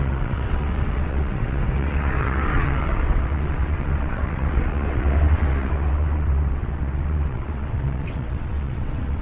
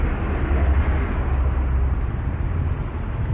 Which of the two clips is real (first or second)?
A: second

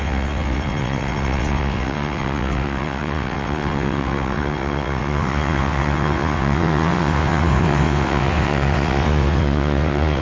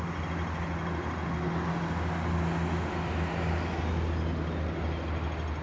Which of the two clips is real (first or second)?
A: second